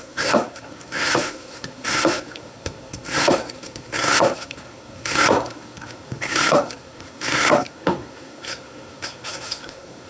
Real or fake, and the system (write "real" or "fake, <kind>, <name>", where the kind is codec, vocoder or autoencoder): fake, codec, SNAC